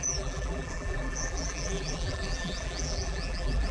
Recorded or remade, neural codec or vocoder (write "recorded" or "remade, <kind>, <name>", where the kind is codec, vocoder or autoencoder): remade, vocoder, BigVGAN v2